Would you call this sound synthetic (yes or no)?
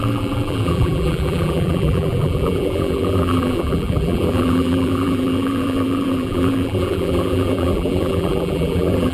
yes